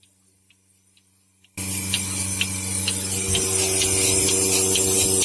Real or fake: real